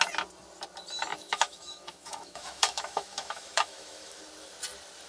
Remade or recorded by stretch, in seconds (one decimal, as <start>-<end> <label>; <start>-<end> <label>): 0.0-1.1 recorded; 1.1-4.2 remade; 4.2-5.1 recorded